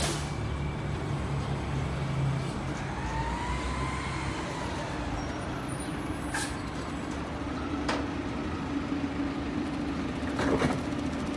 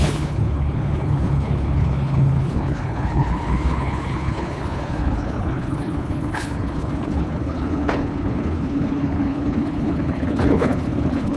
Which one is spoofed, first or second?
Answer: second